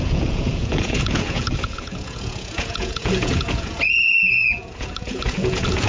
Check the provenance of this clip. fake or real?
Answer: fake